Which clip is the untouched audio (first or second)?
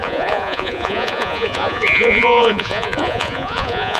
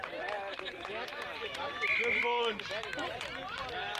second